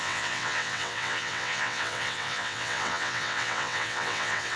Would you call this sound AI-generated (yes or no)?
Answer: yes